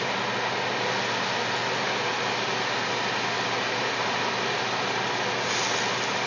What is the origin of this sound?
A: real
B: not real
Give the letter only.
A